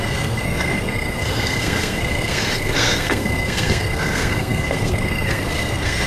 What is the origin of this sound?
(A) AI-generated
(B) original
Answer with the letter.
A